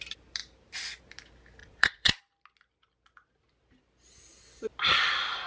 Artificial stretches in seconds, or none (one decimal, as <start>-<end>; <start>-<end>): 1.6-2.2